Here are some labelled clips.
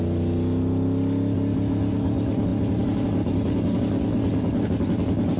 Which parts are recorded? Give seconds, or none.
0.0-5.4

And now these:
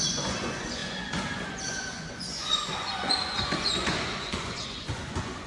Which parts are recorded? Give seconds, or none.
none

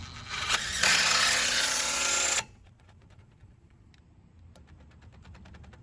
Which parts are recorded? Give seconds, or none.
0.0-0.4; 3.9-5.8

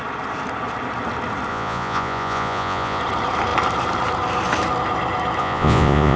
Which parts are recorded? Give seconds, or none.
0.0-1.5; 3.0-5.4

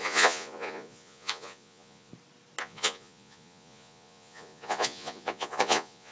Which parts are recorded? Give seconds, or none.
2.1-2.6

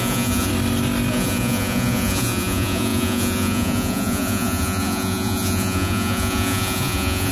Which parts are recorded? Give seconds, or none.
0.5-1.1